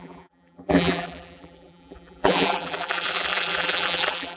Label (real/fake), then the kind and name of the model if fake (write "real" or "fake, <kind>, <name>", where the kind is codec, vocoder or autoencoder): fake, vocoder, BigVGAN v2